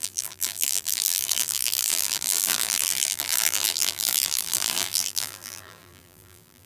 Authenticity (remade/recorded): remade